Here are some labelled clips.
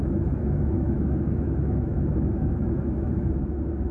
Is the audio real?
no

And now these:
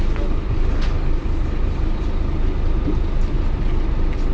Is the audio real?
yes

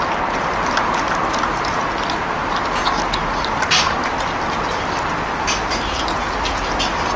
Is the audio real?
yes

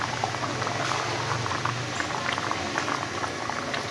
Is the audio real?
yes